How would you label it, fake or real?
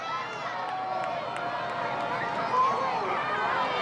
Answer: real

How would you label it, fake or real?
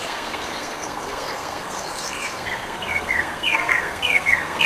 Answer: fake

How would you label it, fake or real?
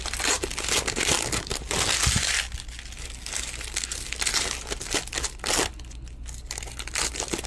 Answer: real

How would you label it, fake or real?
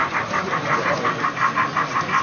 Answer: real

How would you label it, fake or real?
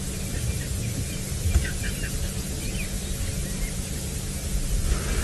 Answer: real